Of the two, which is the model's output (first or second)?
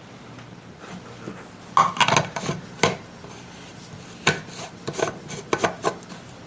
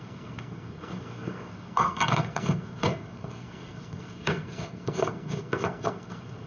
second